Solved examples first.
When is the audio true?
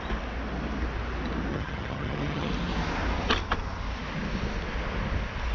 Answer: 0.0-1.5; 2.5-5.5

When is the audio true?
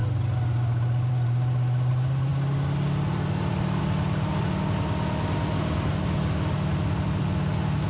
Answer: 0.0-7.9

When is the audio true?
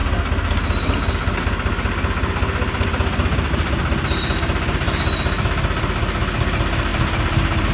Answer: 0.0-6.9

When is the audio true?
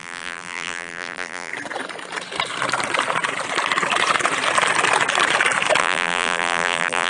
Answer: 1.5-5.8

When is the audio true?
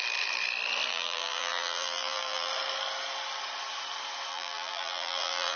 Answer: 0.0-0.9; 2.5-4.3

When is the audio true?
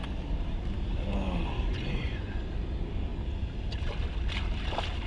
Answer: 0.0-1.7; 2.5-5.1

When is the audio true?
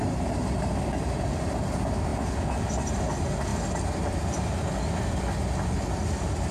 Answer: 0.0-6.5